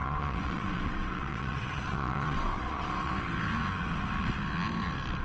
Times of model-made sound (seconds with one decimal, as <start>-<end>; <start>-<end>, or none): 0.0-3.1